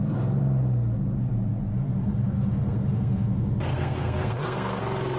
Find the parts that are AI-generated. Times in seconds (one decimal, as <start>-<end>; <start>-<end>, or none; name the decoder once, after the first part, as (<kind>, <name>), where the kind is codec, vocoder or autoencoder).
1.7-4.8 (codec, SNAC)